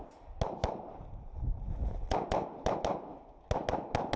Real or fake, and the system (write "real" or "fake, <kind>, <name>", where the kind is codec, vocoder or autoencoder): real